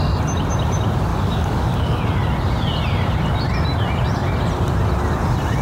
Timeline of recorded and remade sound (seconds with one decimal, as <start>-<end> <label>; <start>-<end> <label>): 0.0-1.1 recorded; 1.1-2.0 remade; 2.0-5.6 recorded